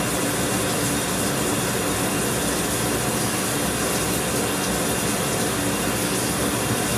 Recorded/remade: recorded